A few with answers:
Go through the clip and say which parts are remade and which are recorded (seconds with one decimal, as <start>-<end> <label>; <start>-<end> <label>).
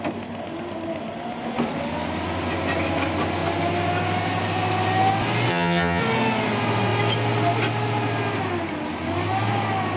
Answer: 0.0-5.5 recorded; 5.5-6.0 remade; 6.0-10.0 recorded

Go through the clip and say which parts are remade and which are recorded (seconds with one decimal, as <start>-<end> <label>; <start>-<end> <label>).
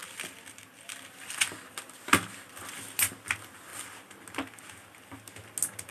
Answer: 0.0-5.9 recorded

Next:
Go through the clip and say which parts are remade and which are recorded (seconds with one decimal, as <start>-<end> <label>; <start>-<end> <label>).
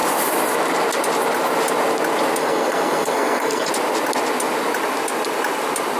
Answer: 0.0-2.4 recorded; 2.4-3.7 remade; 3.7-6.0 recorded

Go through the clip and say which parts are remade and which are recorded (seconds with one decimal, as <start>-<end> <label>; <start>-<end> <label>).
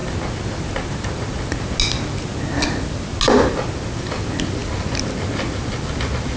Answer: 0.0-6.4 recorded